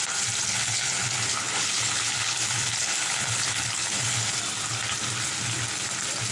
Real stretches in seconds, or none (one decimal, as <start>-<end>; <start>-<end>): 0.0-0.5; 4.3-6.3